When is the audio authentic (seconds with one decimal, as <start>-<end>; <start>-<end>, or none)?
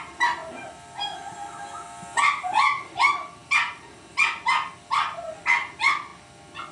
0.0-6.7